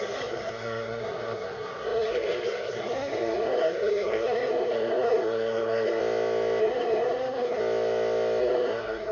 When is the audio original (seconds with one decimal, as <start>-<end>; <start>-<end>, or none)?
6.0-6.6; 7.6-8.4